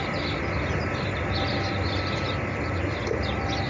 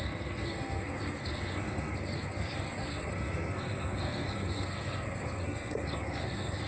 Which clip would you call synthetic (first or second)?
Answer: second